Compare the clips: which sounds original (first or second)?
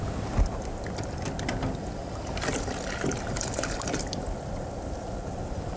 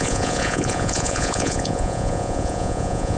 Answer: first